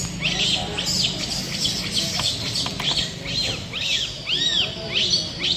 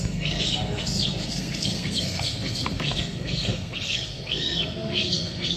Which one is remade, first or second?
second